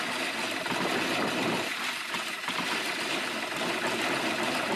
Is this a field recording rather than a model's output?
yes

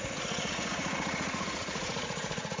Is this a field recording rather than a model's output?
no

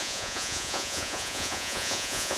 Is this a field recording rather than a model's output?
no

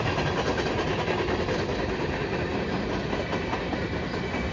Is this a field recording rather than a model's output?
yes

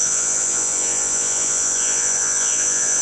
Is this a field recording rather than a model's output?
no